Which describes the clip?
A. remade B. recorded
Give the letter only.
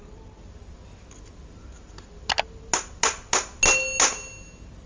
B